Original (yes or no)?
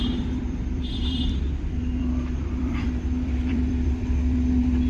no